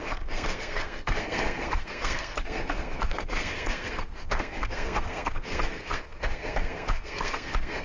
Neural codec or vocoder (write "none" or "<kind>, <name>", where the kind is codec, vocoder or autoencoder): codec, SNAC